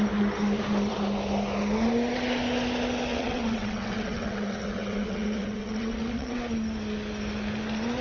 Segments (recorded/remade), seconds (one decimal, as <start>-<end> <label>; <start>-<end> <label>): 0.0-3.1 recorded; 3.1-6.4 remade; 6.4-8.0 recorded